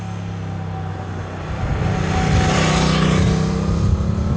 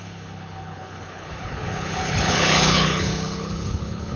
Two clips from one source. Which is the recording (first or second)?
first